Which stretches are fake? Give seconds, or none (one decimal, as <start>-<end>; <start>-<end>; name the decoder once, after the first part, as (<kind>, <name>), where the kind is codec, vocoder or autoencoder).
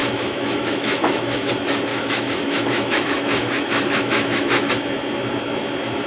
0.0-1.5 (autoencoder, DAC-VAE); 1.9-4.7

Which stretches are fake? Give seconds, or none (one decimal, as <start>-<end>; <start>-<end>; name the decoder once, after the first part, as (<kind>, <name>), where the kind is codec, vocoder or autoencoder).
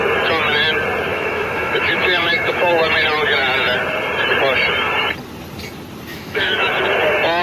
1.1-2.7 (autoencoder, DAC-VAE); 6.1-6.7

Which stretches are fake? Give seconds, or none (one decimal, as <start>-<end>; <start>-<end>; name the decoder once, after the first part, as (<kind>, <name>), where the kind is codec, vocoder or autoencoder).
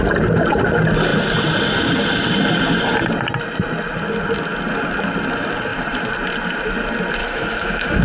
7.2-8.0 (autoencoder, DAC-VAE)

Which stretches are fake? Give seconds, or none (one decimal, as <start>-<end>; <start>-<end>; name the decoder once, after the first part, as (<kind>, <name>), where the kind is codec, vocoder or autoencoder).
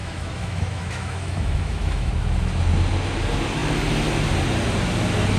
0.0-2.1 (autoencoder, DAC-VAE)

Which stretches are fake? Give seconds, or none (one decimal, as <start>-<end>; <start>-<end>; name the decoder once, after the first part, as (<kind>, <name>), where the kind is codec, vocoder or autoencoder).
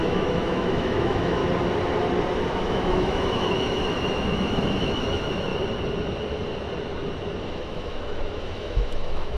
0.0-1.4 (autoencoder, DAC-VAE); 2.6-5.5; 7.4-9.4